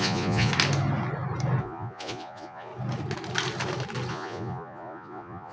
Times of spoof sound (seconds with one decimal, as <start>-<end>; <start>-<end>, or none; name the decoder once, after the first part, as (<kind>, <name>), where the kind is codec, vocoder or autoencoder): 0.0-0.5 (vocoder, Vocos); 1.6-2.7; 4.1-5.5